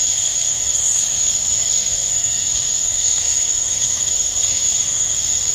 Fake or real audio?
fake